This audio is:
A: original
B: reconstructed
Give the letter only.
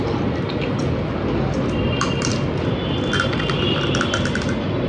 A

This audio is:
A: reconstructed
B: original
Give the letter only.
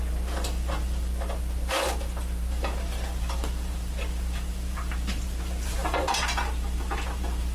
A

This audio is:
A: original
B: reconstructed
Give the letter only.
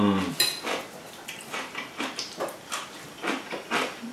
B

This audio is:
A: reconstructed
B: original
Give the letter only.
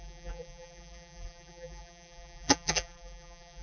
A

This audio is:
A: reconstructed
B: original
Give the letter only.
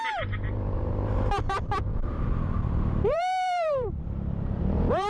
A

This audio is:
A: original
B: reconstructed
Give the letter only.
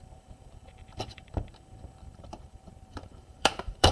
B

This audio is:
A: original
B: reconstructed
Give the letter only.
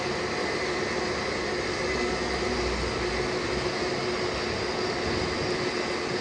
A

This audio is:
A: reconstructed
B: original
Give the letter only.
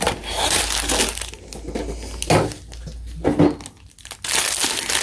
B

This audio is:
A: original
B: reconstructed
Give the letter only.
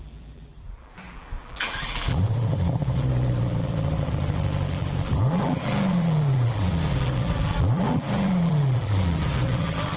B